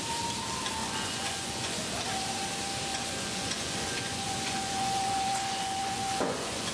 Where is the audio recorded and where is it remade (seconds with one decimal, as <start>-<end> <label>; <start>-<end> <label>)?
0.0-0.8 recorded; 0.8-1.8 remade; 1.8-2.9 recorded; 2.9-6.7 remade